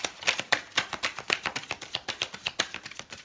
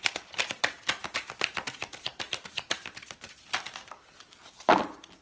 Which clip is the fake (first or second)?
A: first